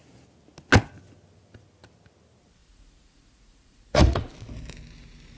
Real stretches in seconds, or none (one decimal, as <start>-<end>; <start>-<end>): 0.0-2.6; 4.3-5.4